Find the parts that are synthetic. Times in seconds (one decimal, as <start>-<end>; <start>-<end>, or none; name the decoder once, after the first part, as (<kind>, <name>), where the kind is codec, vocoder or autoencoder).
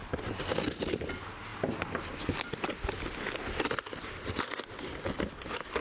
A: none